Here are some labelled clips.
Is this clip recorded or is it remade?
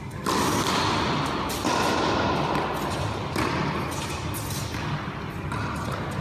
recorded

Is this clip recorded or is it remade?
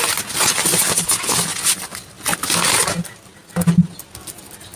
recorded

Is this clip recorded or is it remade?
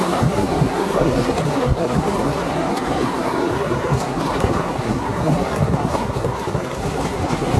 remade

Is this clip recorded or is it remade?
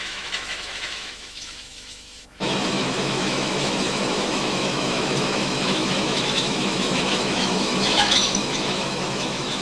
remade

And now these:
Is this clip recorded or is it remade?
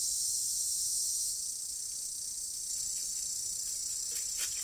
recorded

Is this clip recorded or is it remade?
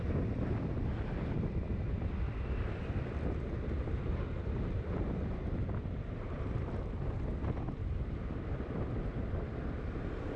remade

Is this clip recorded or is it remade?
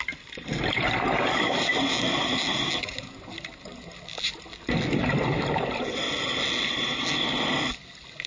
recorded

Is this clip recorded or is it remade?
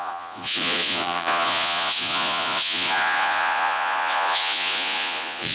remade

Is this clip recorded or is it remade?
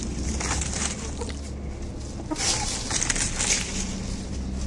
recorded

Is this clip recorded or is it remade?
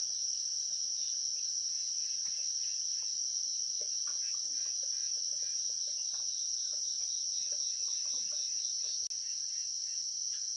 recorded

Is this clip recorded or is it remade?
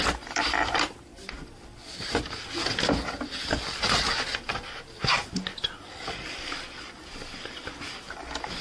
recorded